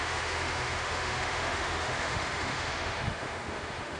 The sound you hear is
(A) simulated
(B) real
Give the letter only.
A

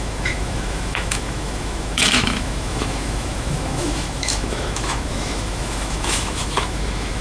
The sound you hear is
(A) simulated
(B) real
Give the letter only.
A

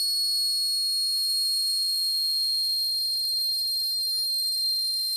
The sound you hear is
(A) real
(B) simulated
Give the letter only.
B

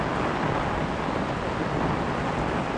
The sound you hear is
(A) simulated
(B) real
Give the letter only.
B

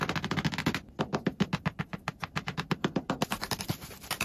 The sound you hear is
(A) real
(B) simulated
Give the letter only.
A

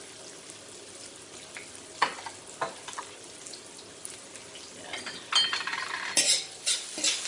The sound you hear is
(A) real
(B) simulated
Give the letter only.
A